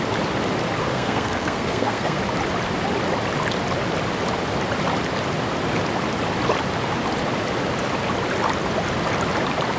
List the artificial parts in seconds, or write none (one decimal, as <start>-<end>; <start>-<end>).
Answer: 0.8-2.2